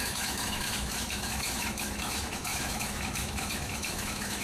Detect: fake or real fake